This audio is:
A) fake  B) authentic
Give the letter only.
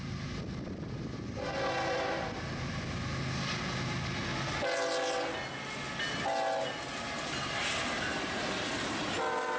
B